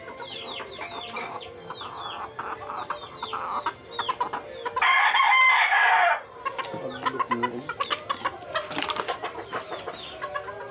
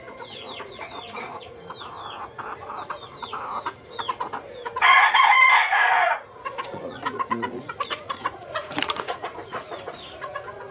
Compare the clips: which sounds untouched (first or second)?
first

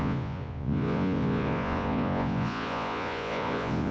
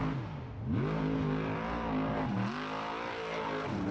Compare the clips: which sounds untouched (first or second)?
second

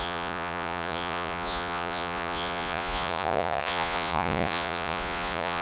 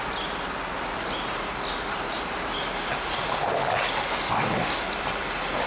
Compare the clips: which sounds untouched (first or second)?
second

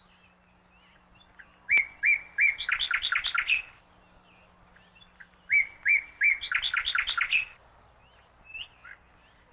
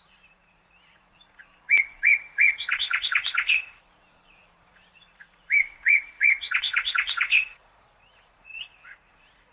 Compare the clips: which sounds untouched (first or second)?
first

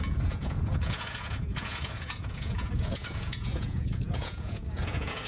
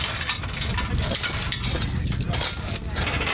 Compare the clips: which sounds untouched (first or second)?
second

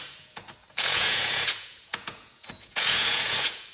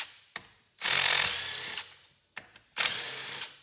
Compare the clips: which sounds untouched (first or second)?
second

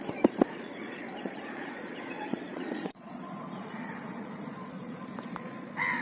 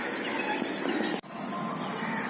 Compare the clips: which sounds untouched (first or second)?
second